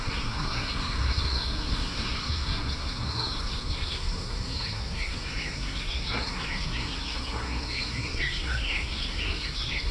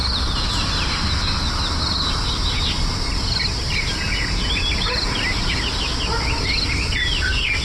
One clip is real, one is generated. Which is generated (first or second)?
first